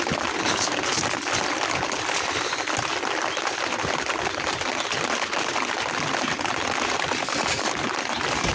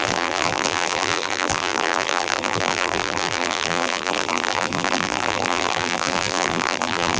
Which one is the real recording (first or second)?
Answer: first